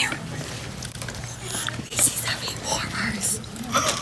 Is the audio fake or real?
real